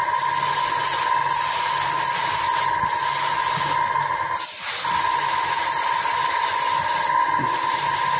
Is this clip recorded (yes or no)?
yes